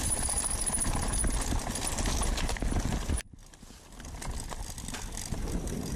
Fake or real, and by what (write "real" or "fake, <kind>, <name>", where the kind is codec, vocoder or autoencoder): real